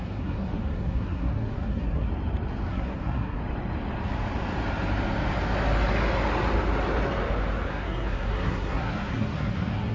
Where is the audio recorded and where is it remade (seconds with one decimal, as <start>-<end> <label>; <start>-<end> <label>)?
0.0-2.1 remade; 2.1-2.7 recorded; 2.7-3.4 remade; 3.4-7.7 recorded; 7.7-9.9 remade